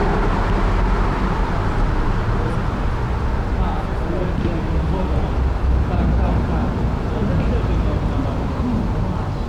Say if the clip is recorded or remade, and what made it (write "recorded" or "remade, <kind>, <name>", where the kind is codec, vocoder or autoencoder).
recorded